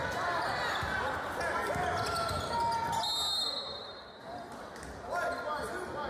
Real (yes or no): yes